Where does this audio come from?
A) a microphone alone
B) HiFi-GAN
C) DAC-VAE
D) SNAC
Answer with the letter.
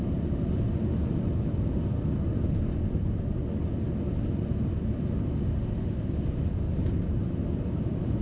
A